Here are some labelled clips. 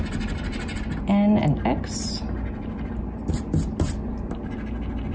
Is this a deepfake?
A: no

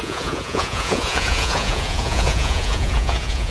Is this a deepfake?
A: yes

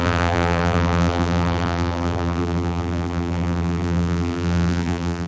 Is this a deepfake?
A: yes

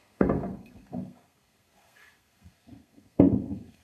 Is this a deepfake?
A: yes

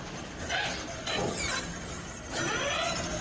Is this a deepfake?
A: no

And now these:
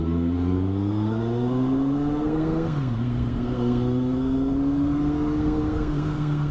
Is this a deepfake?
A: yes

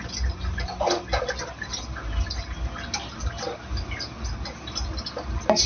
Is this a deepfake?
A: no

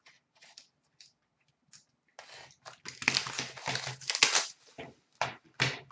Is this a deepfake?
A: no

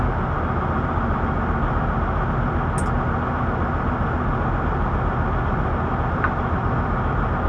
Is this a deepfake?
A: no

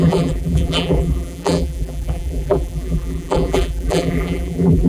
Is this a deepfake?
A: yes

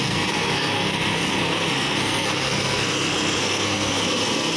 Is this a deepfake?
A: yes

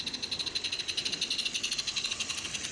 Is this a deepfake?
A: no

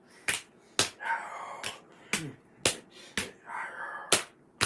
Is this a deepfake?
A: no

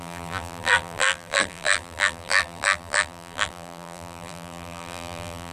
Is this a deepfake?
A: yes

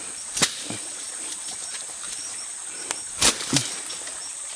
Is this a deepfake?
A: yes